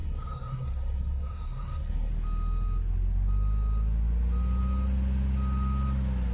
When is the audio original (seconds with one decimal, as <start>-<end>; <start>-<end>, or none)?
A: 2.1-6.3